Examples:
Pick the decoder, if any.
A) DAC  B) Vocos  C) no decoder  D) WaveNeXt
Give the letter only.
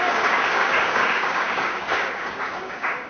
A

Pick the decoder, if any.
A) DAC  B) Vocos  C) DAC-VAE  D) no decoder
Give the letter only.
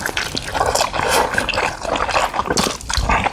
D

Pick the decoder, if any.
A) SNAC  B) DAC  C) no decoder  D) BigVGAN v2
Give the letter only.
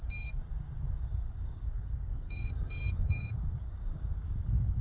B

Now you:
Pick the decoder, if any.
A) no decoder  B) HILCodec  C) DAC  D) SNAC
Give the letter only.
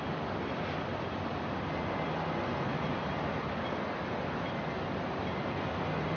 A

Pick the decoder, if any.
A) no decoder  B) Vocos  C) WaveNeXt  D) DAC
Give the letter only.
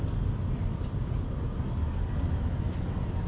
A